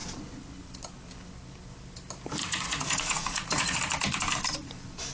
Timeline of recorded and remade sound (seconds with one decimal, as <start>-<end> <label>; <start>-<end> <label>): 0.0-2.4 recorded; 2.4-3.8 remade; 3.8-5.1 recorded

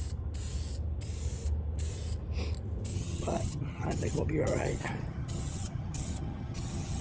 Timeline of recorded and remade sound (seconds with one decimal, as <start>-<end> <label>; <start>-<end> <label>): 0.0-2.9 recorded; 2.9-7.0 remade

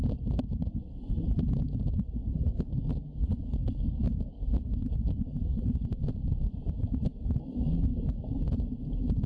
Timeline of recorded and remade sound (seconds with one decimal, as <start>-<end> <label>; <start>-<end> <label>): 0.0-2.2 recorded; 2.2-6.0 remade; 6.0-7.1 recorded; 7.1-8.4 remade; 8.4-9.3 recorded

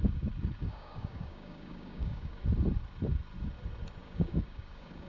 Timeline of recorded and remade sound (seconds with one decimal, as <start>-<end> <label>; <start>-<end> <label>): 0.0-0.6 recorded; 0.6-2.4 remade; 2.4-4.0 recorded; 4.0-5.1 remade

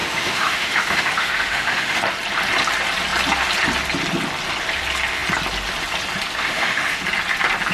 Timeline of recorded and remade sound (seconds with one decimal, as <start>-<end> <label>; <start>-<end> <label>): 0.0-2.0 remade; 2.0-6.4 recorded; 6.4-7.0 remade; 7.0-7.7 recorded

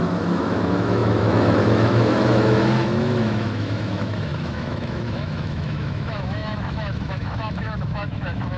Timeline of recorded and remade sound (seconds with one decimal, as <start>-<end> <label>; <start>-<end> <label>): 0.0-8.6 remade